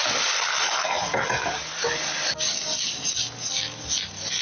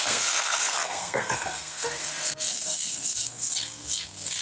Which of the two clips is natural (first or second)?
first